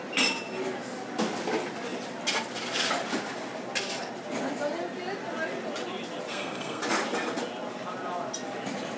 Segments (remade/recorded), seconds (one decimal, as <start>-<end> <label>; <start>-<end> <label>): 0.0-6.3 recorded; 6.3-6.8 remade; 6.8-9.0 recorded